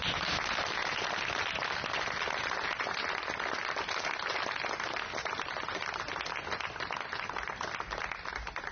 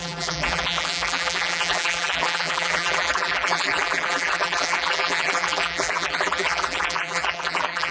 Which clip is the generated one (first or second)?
second